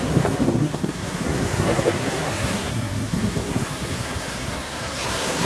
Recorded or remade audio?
remade